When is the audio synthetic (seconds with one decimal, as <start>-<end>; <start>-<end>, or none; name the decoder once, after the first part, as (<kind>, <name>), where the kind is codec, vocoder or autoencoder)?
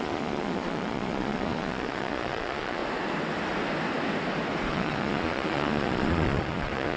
0.0-2.8 (vocoder, Vocos); 4.7-7.0